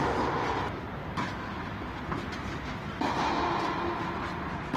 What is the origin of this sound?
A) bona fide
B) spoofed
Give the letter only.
A